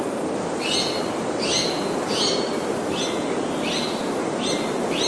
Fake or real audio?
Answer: real